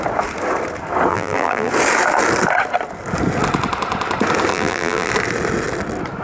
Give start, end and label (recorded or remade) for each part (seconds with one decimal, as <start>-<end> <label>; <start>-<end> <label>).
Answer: 0.0-1.1 recorded; 1.1-1.7 remade; 1.7-4.5 recorded; 4.5-5.1 remade; 5.1-6.2 recorded